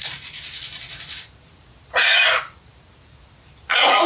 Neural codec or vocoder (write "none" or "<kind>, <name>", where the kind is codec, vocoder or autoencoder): none